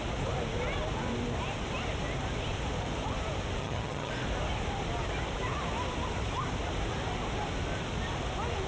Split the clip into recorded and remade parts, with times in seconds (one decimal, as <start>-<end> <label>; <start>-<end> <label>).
0.0-3.6 recorded; 3.6-4.1 remade; 4.1-8.7 recorded